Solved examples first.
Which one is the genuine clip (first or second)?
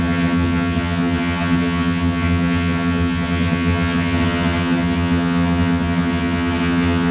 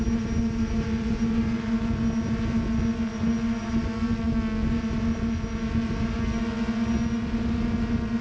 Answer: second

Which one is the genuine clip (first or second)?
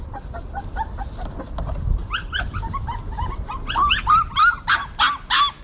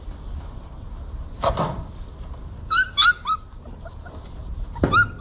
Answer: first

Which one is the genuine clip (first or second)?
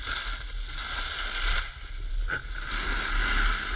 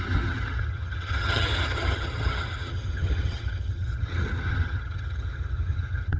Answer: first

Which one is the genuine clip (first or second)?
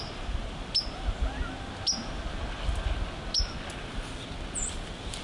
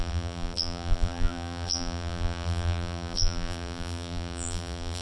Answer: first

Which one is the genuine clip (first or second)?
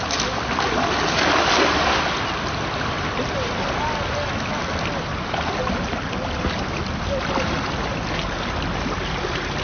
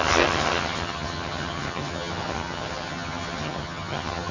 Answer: first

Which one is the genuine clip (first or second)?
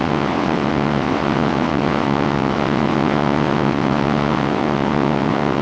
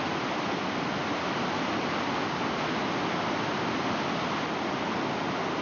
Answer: second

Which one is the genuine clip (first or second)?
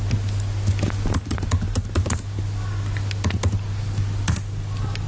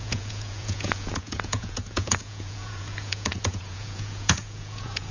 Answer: first